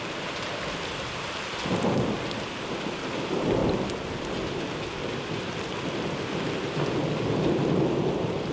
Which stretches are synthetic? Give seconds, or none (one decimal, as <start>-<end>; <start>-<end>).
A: none